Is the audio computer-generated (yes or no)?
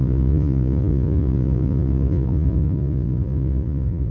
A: yes